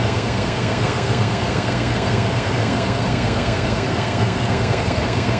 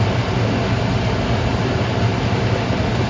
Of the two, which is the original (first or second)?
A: second